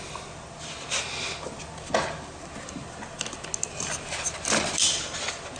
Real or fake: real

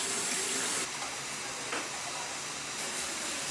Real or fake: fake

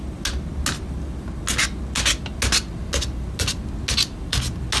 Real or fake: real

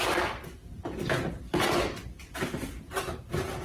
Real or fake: real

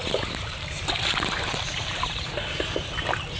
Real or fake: real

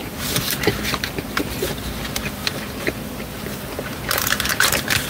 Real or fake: fake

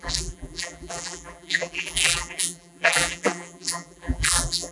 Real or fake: fake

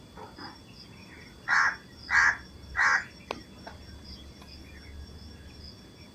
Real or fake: real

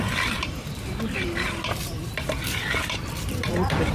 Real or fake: fake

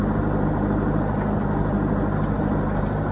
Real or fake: real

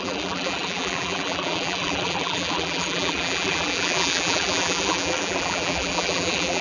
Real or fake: fake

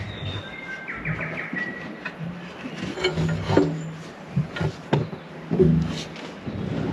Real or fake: real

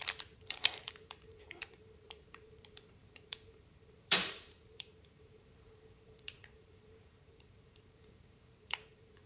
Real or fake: fake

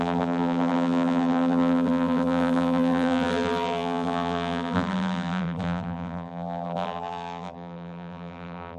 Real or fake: fake